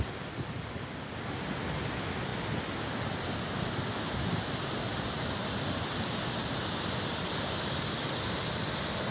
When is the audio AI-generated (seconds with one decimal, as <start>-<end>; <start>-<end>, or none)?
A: none